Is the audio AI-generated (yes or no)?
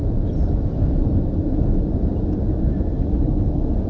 no